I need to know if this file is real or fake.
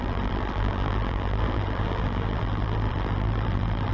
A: fake